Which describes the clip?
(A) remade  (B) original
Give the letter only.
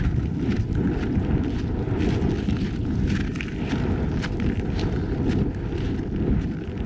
B